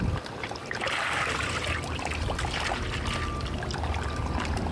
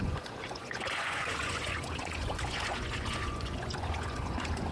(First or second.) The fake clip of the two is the second